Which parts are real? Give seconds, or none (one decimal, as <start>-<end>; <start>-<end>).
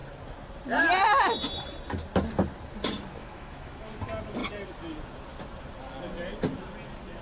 0.0-3.2; 3.9-7.2